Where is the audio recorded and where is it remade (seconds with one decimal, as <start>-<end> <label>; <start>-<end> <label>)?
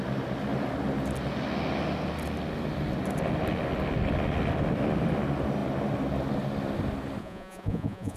0.0-7.2 recorded; 7.2-8.2 remade